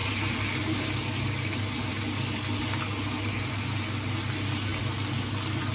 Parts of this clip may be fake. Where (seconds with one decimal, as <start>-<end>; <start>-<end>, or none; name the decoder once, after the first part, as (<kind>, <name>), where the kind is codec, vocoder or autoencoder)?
none